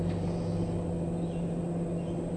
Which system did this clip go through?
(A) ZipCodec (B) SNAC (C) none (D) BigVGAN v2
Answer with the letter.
C